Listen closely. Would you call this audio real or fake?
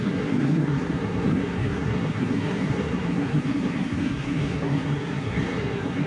fake